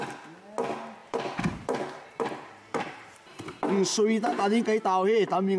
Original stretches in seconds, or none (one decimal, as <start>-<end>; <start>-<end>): 0.0-1.0; 3.5-5.6